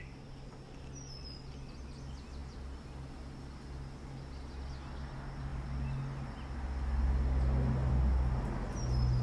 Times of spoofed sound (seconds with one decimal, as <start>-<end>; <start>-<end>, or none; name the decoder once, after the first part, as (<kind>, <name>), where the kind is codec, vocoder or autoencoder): none